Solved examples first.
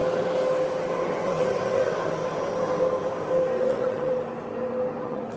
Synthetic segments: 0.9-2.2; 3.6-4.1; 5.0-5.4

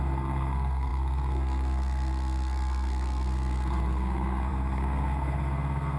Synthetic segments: 0.0-6.0